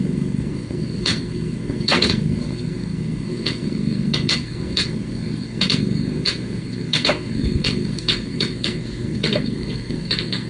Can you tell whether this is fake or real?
fake